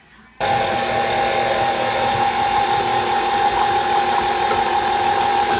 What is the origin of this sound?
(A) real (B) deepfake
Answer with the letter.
A